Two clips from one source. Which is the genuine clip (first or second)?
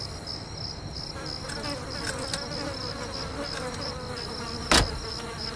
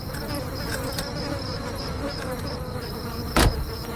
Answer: first